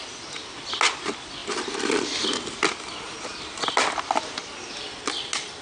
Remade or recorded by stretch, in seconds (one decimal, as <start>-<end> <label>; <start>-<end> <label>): 0.0-5.6 recorded